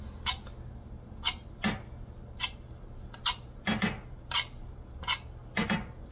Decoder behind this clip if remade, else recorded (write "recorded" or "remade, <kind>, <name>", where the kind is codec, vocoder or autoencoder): recorded